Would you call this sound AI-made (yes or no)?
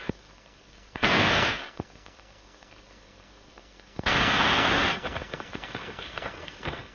yes